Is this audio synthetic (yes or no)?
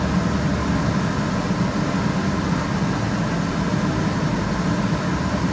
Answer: no